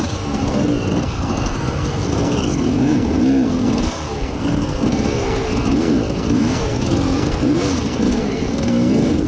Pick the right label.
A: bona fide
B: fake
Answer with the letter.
B